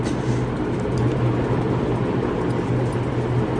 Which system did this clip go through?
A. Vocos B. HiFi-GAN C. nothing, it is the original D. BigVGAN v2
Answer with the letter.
C